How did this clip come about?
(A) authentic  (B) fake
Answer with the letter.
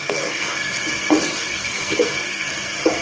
B